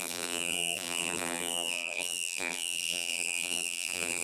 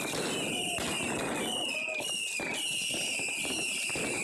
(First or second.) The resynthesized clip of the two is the first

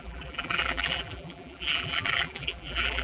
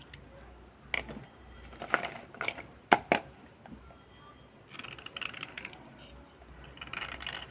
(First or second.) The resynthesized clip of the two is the first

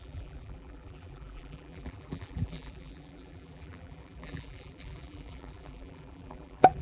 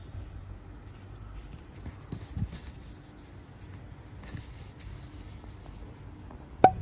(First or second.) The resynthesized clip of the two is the first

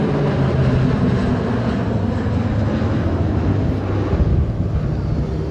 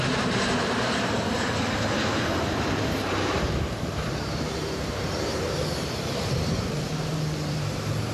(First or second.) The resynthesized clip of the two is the second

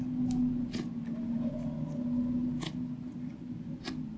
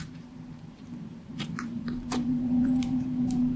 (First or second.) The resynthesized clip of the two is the second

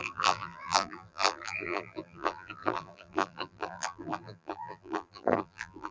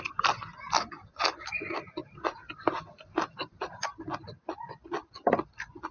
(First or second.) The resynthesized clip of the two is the first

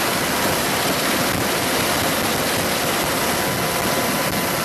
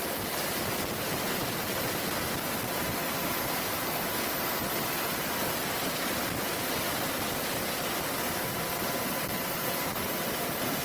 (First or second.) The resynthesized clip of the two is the second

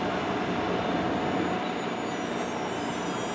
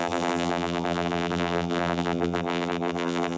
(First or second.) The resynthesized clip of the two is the second